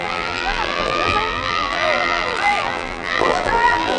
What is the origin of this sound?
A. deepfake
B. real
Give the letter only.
A